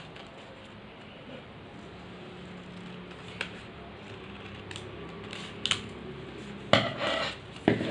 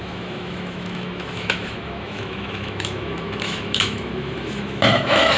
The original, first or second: first